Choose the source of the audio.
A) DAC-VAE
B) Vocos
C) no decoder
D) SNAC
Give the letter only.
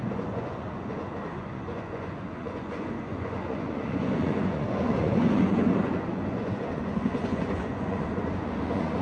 B